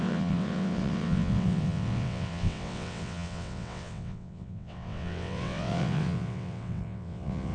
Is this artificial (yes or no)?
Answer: yes